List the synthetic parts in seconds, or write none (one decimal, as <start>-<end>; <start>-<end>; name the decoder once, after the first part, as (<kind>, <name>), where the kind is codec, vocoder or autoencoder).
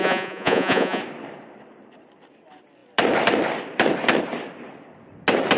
0.0-1.0 (vocoder, Vocos)